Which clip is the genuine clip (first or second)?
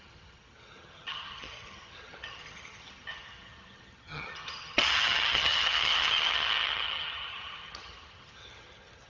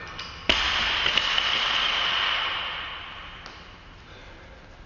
second